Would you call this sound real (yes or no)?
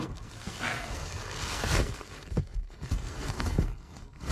no